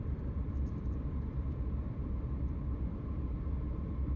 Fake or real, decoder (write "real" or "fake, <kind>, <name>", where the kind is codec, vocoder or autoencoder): fake, vocoder, BigVGAN v2